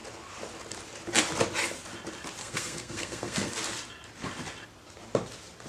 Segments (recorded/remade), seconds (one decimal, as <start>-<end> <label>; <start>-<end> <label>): 0.0-2.4 recorded; 2.4-3.5 remade; 3.5-5.7 recorded